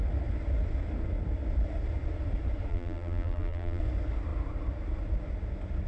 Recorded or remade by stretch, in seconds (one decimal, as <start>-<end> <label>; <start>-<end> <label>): 0.0-2.7 recorded; 2.7-3.8 remade; 3.8-5.9 recorded